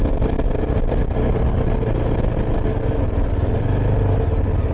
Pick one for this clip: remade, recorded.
recorded